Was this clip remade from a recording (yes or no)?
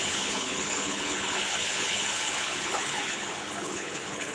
yes